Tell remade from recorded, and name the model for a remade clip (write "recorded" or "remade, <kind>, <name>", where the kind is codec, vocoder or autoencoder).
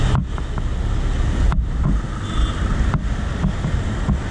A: recorded